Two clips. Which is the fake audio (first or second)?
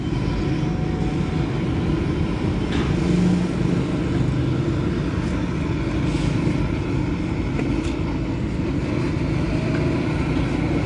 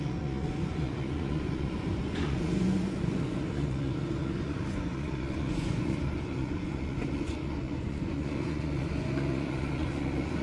second